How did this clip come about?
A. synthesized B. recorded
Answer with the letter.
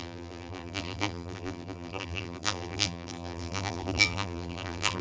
A